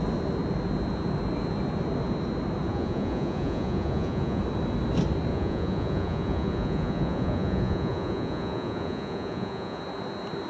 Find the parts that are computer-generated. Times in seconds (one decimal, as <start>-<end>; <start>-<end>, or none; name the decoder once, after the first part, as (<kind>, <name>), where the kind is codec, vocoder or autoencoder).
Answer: 2.7-4.4 (vocoder, Vocos); 5.3-9.8